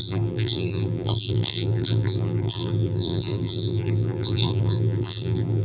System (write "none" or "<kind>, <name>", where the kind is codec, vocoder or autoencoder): vocoder, BigVGAN v2